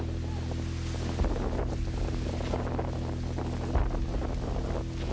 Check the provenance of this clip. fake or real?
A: real